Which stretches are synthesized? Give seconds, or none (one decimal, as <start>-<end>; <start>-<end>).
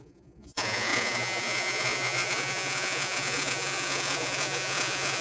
0.0-5.2